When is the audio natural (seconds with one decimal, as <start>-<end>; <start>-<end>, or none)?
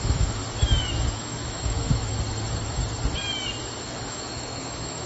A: 0.4-1.1; 2.1-4.1